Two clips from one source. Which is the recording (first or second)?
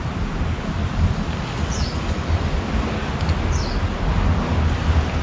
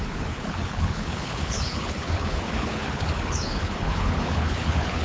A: first